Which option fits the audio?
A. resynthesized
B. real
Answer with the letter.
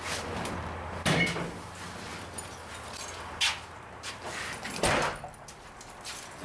B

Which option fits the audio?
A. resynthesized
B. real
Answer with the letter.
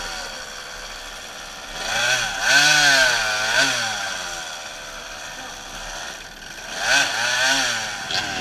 B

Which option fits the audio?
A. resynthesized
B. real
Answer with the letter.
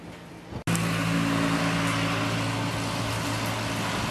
B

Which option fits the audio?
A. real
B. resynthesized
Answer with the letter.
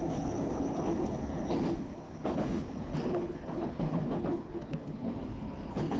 B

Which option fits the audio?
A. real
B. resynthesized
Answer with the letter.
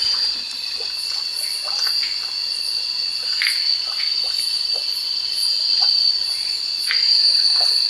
A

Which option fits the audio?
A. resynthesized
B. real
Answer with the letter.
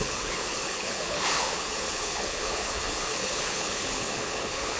A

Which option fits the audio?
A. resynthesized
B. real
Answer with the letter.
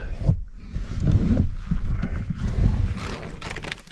B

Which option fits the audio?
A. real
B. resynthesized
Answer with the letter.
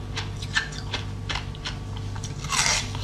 A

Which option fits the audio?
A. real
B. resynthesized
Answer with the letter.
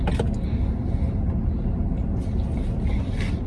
A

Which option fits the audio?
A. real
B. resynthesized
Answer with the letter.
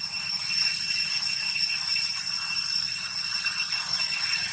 A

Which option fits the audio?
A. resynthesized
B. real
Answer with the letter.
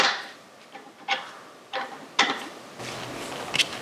B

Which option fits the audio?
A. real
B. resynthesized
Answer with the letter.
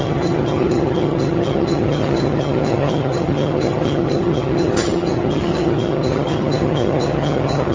B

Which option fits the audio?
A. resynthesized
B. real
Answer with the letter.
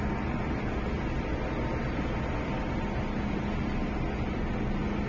B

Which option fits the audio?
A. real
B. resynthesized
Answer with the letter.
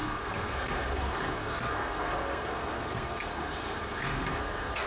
B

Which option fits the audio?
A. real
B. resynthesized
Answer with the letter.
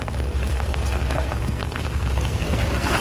B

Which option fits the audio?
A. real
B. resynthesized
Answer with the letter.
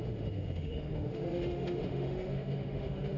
B